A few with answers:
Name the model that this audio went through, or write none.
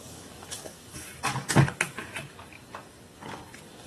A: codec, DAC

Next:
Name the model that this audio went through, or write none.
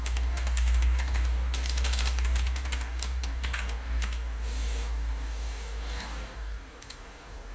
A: codec, DAC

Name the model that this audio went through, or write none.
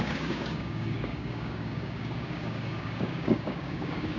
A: codec, DAC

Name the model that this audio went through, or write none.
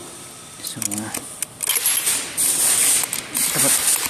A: none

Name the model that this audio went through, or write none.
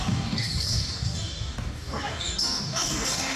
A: codec, DAC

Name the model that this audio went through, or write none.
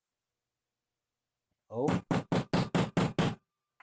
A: none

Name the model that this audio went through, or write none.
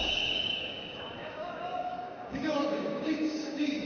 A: codec, DAC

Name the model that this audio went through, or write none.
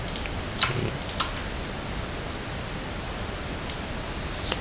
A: none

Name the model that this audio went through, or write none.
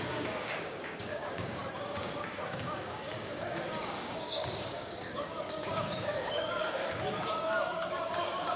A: codec, DAC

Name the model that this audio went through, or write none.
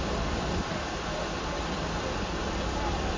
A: none